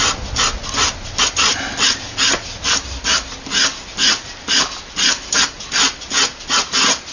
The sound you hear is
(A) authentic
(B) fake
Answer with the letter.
A